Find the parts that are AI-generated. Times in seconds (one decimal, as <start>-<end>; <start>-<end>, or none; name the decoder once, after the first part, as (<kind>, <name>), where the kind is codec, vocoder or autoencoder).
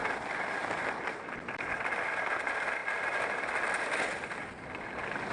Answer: none